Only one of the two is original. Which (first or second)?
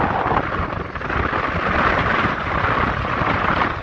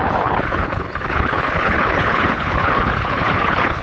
first